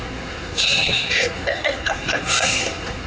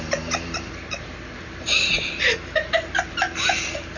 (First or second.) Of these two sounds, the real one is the second